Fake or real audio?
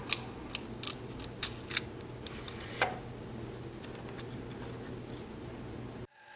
real